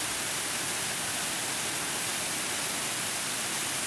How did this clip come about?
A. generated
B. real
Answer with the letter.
B